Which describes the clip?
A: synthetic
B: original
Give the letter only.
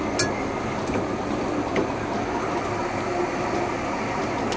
B